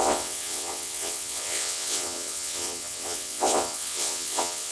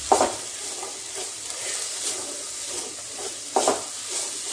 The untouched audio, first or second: second